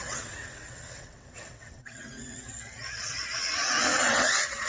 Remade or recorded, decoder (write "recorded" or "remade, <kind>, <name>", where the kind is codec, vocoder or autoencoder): remade, vocoder, WaveNeXt